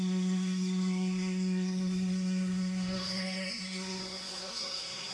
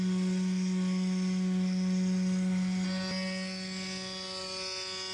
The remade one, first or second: first